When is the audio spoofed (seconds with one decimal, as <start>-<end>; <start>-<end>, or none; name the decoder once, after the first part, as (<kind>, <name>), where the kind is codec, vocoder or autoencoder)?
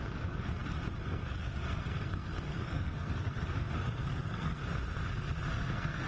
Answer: 0.0-4.6 (codec, SNAC); 5.5-6.1